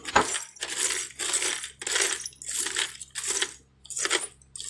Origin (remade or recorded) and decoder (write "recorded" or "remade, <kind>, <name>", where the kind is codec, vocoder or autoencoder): recorded